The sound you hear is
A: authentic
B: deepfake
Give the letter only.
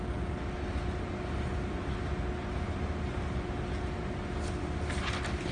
A